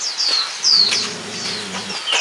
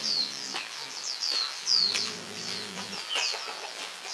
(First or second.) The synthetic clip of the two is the second